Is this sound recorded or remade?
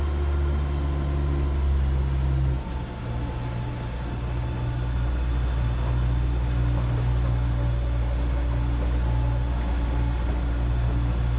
recorded